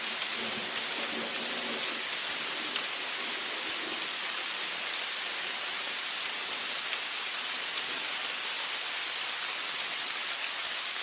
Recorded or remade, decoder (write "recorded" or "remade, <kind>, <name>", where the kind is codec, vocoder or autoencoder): recorded